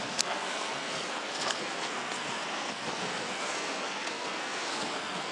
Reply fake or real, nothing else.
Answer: fake